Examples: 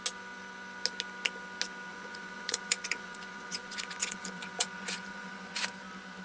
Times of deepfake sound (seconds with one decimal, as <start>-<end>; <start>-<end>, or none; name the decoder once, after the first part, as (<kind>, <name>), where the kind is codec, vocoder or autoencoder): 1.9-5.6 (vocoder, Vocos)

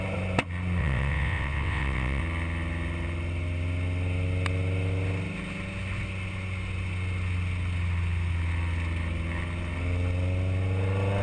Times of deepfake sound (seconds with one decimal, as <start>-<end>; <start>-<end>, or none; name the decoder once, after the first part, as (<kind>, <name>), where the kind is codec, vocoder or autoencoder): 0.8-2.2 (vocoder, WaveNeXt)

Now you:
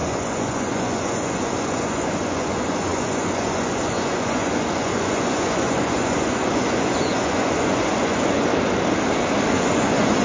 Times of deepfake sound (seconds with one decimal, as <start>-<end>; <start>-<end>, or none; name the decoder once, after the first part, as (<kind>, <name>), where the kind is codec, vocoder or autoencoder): 0.0-8.5 (vocoder, Vocos); 9.5-10.2

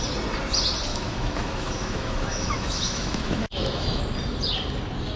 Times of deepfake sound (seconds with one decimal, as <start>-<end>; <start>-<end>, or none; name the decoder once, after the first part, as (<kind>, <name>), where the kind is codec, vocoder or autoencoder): 0.9-4.0 (autoencoder, DAC-VAE)

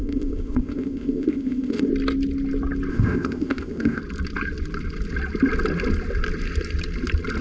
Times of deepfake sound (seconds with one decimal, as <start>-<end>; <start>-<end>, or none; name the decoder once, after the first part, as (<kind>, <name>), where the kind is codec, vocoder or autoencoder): 0.0-1.9 (codec, ZipCodec); 2.9-4.0